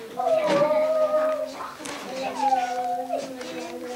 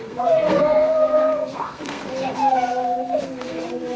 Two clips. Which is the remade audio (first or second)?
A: second